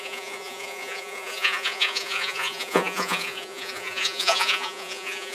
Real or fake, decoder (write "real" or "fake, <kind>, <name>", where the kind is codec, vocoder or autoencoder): fake, vocoder, Vocos